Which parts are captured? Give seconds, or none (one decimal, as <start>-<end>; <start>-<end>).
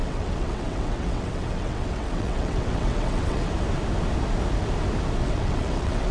3.5-5.2